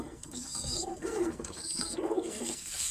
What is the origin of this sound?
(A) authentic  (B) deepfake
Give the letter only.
B